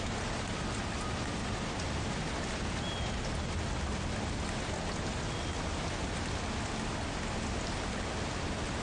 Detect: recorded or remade recorded